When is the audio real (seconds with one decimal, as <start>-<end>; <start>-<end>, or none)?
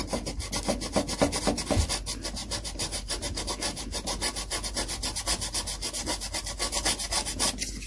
0.0-2.4; 5.2-7.9